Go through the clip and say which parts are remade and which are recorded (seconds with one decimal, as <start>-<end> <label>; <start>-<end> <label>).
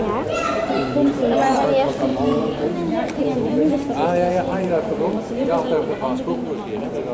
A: 0.0-4.3 recorded; 4.3-5.9 remade; 5.9-7.1 recorded